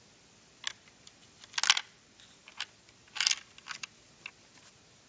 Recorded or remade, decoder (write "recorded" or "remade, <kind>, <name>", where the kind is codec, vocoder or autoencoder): recorded